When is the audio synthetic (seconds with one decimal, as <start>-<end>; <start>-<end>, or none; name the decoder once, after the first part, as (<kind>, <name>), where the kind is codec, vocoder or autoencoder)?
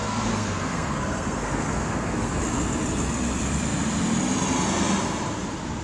0.0-2.4 (codec, SNAC)